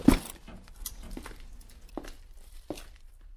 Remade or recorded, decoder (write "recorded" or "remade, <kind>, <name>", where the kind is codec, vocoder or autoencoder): recorded